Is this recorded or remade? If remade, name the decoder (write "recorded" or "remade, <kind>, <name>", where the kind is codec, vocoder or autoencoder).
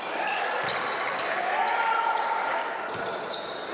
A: remade, vocoder, BigVGAN v2